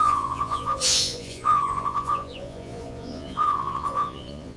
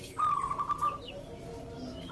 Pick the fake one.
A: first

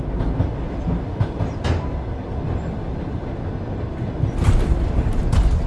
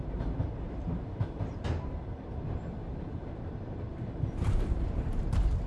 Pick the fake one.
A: second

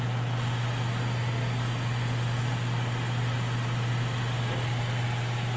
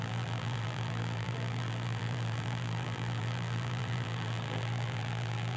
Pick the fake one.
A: second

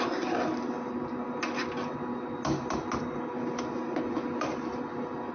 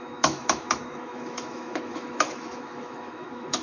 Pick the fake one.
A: second